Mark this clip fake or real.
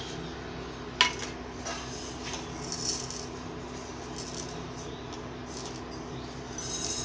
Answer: real